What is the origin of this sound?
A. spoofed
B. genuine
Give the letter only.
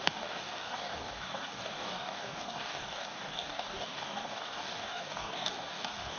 A